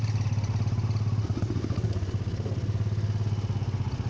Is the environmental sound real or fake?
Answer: real